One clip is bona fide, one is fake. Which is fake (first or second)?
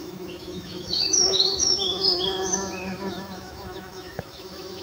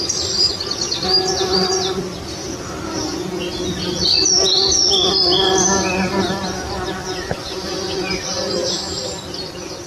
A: first